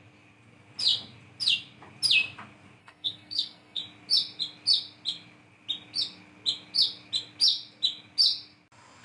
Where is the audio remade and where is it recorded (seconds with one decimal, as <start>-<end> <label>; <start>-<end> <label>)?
0.0-2.8 recorded; 2.8-3.8 remade; 3.8-9.0 recorded